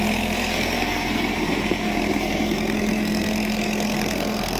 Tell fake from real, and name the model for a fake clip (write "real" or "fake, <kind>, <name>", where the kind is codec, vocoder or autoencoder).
fake, codec, SNAC